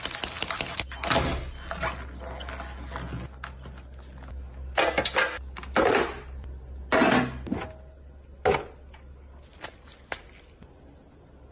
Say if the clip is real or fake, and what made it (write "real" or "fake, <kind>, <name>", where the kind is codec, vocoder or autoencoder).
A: real